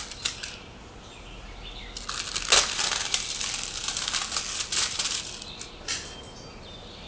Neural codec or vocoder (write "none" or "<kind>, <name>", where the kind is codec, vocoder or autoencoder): none